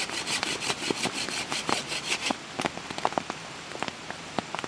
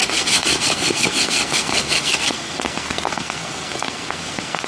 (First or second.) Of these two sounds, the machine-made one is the second